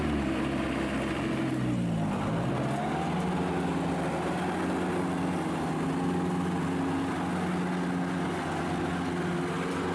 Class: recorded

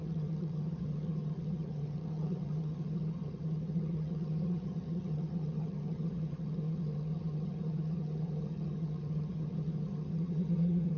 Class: remade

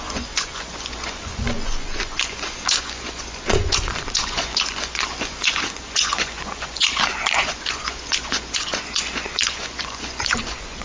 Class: remade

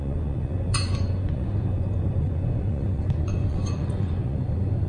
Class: remade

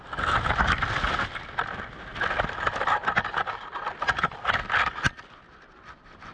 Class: recorded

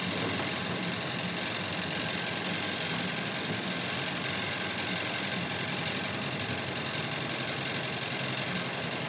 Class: recorded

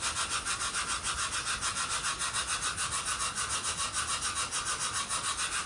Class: recorded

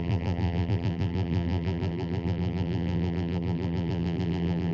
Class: remade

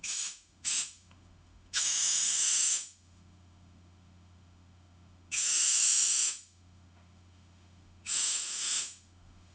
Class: remade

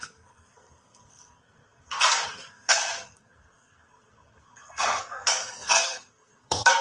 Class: remade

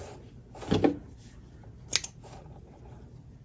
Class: recorded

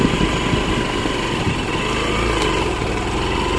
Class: recorded